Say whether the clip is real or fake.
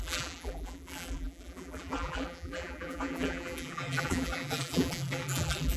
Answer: fake